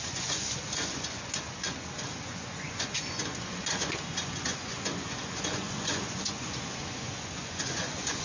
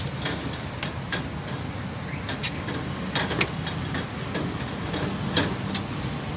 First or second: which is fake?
first